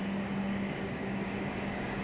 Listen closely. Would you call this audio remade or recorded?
remade